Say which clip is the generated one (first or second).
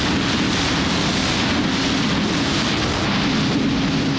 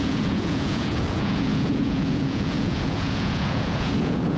second